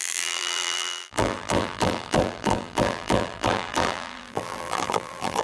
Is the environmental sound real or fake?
fake